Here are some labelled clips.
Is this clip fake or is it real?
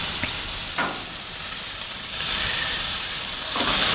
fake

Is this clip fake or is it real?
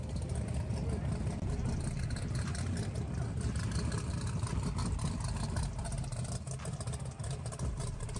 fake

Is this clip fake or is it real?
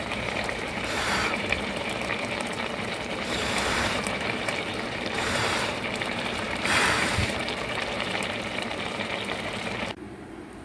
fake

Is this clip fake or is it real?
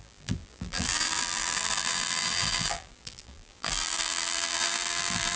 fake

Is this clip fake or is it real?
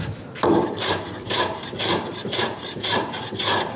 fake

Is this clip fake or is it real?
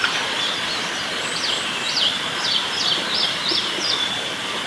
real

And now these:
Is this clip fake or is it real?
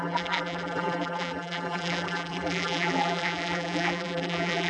fake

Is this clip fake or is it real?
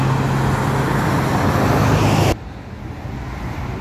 real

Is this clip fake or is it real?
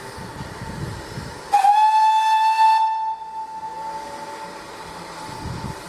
real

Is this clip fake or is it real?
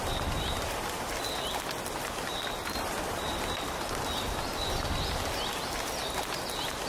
real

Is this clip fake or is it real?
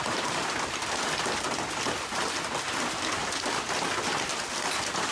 real